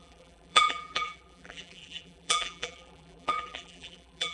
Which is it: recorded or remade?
remade